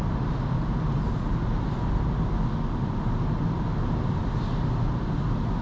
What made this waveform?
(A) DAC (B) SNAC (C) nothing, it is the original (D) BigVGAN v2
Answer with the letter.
C